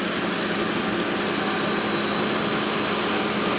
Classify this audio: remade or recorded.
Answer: recorded